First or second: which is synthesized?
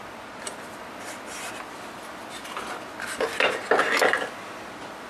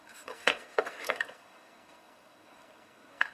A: second